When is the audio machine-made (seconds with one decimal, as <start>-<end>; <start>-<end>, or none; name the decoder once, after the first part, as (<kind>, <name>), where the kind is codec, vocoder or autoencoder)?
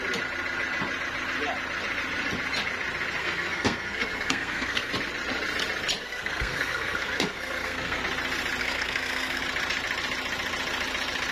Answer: 3.2-4.9 (codec, SNAC); 6.0-8.0; 8.6-9.4